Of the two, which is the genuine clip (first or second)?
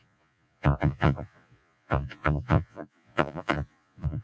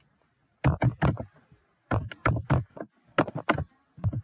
second